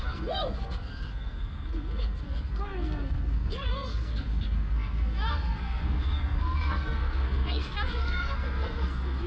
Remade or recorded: remade